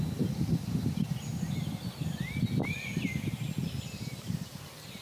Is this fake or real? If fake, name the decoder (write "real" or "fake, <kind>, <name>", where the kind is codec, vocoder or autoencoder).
real